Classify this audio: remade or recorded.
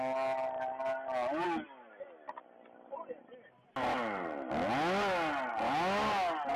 recorded